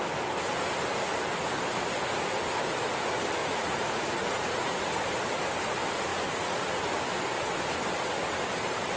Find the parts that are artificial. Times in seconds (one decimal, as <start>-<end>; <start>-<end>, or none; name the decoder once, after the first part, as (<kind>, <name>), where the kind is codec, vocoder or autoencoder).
3.4-4.9 (vocoder, Vocos); 6.1-6.7